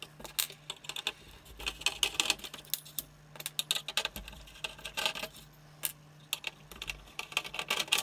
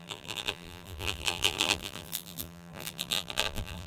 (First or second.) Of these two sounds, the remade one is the second